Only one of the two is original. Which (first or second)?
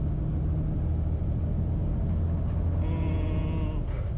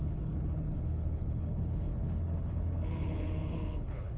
first